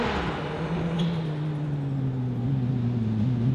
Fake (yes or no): no